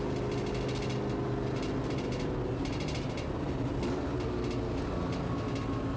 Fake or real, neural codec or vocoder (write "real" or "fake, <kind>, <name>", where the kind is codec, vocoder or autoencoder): real